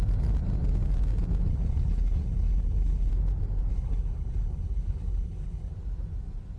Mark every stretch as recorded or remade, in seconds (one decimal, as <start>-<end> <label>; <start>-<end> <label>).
0.0-1.5 recorded; 1.5-3.1 remade; 3.1-3.7 recorded; 3.7-5.7 remade; 5.7-6.6 recorded